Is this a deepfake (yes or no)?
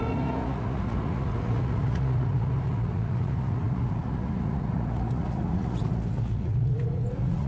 yes